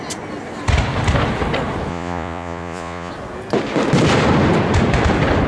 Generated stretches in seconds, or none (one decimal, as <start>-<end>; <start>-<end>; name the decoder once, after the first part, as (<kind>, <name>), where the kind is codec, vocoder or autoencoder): 1.9-3.1 (vocoder, Vocos)